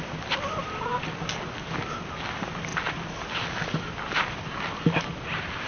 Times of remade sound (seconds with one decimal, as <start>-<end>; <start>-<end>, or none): none